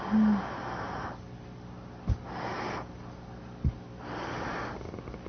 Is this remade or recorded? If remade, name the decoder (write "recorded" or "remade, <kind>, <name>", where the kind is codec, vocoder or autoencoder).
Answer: recorded